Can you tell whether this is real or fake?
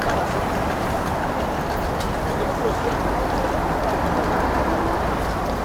real